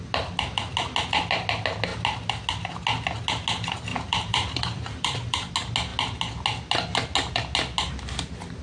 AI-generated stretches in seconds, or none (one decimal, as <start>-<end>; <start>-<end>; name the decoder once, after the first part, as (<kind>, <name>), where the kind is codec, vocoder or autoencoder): 3.9-5.5 (vocoder, BigVGAN v2)